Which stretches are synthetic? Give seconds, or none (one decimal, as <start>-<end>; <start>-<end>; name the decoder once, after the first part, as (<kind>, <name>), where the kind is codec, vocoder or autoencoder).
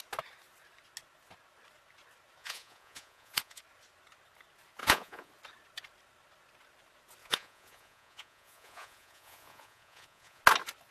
2.4-3.6 (vocoder, Vocos); 4.8-5.3; 7.2-10.4